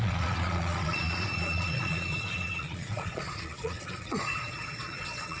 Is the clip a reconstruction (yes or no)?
yes